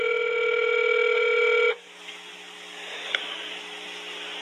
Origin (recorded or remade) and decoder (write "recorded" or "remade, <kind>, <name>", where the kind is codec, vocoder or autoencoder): recorded